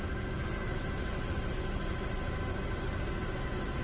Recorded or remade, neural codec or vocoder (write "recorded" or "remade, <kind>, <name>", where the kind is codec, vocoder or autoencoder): recorded